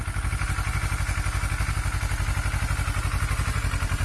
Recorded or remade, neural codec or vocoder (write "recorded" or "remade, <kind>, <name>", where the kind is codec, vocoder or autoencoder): recorded